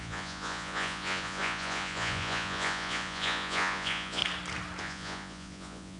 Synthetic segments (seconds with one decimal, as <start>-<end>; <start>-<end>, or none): 0.0-4.2; 4.8-6.0